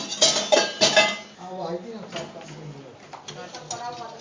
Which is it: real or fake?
real